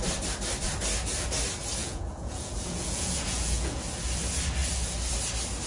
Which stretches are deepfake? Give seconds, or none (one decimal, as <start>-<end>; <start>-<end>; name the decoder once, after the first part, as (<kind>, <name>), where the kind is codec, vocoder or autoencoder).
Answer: 1.8-3.8 (vocoder, Vocos)